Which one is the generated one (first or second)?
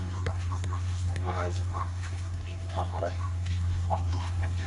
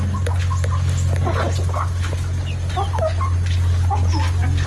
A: first